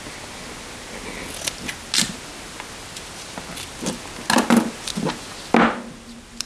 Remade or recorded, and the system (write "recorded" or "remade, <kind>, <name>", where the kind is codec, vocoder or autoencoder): recorded